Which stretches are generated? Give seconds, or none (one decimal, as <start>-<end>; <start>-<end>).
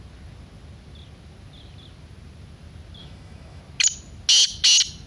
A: 3.0-3.6